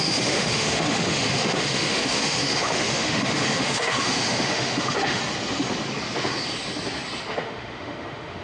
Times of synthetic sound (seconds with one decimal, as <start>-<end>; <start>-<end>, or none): 0.0-5.2; 7.2-8.4

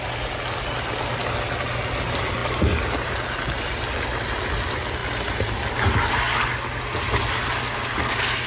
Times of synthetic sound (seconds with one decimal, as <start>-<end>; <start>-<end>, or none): none

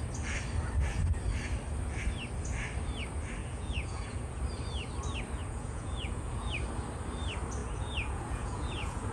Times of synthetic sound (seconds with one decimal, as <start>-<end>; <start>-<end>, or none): 3.4-4.4; 5.4-6.5; 7.6-9.1

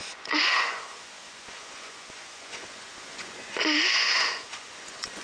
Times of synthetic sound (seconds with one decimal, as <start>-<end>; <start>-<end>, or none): 0.0-5.2

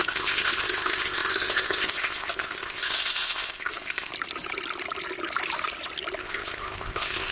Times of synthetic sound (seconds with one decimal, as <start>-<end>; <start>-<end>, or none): 0.0-4.1; 6.2-7.3